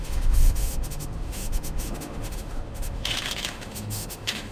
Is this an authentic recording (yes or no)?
no